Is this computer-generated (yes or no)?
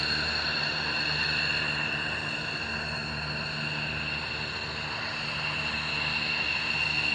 no